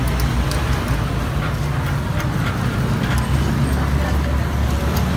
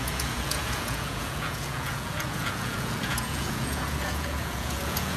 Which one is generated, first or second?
second